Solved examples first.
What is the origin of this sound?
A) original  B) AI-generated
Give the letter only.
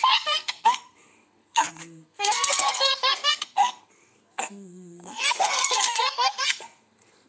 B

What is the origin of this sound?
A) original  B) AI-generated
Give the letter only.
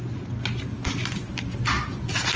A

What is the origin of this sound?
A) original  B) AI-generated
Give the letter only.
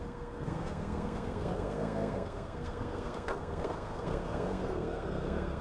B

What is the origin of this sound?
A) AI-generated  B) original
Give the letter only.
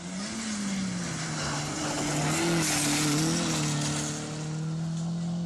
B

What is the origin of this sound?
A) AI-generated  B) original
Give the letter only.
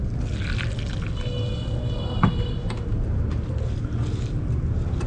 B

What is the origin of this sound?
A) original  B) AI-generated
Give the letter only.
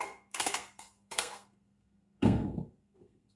B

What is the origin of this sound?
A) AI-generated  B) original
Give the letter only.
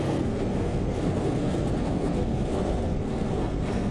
A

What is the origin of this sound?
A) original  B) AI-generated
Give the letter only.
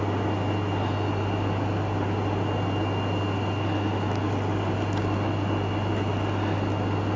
A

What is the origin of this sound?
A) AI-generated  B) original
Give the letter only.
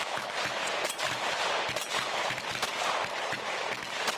B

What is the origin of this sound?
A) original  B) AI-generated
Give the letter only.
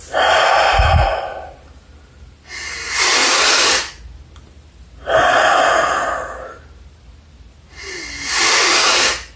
A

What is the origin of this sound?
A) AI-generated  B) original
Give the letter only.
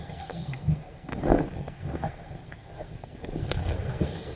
A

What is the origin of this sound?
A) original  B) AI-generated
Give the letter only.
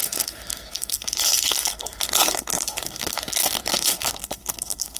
B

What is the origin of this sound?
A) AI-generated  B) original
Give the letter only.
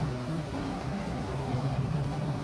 A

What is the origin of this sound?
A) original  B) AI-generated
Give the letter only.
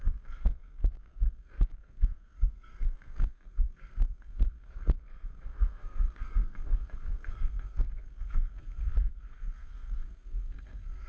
B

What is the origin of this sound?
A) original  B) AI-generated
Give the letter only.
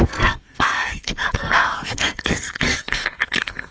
B